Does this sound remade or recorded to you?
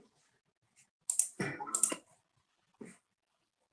recorded